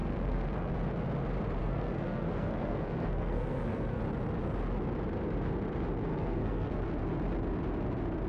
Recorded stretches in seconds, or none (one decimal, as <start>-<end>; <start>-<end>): 0.7-1.6; 4.0-6.1; 7.0-8.3